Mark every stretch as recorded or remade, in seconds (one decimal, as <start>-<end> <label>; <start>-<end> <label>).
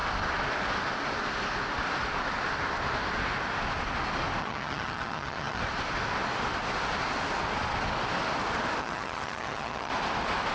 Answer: 0.0-4.4 recorded; 4.4-5.6 remade; 5.6-8.8 recorded; 8.8-9.9 remade; 9.9-10.5 recorded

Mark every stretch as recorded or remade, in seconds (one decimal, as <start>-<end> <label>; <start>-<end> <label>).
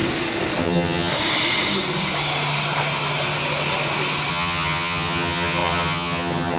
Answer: 0.0-0.6 recorded; 0.6-1.1 remade; 1.1-4.3 recorded; 4.3-6.6 remade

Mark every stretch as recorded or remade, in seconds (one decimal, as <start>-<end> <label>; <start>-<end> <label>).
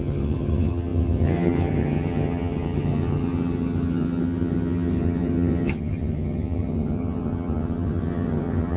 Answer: 0.0-8.8 remade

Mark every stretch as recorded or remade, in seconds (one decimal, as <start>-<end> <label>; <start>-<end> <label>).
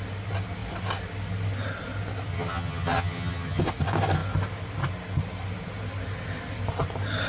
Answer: 0.0-2.3 recorded; 2.3-3.6 remade; 3.6-7.3 recorded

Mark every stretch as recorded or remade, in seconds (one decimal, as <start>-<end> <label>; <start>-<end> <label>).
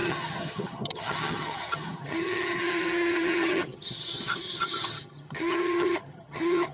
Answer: 0.0-6.7 remade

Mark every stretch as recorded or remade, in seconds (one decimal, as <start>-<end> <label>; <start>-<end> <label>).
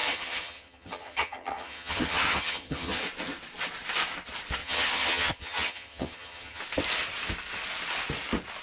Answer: 0.0-3.0 remade; 3.0-4.6 recorded; 4.6-6.6 remade; 6.6-8.6 recorded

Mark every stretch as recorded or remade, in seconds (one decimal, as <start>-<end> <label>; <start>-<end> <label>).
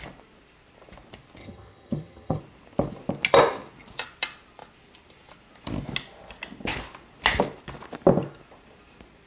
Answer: 0.0-1.4 recorded; 1.4-2.4 remade; 2.4-9.3 recorded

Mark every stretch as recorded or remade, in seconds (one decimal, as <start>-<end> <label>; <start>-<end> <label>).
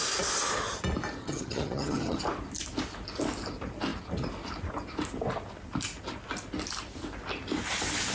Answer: 0.0-1.2 recorded; 1.2-2.2 remade; 2.2-8.1 recorded